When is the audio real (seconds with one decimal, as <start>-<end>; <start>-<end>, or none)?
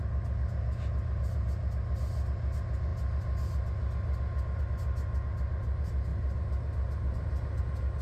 0.0-8.0